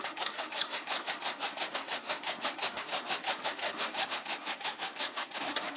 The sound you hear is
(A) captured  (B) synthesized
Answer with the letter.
B